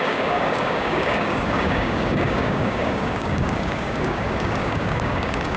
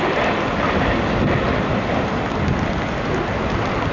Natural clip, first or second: second